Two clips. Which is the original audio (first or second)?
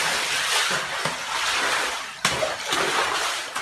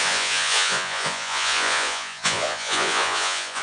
first